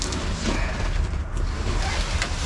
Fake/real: real